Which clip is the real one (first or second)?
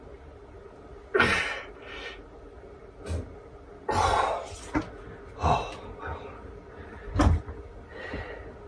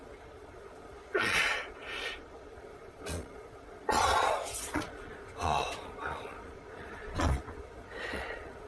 first